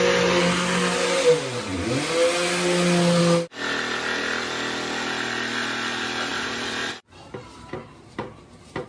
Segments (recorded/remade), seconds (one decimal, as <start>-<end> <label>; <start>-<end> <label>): 0.0-6.3 recorded; 6.3-6.9 remade; 6.9-8.9 recorded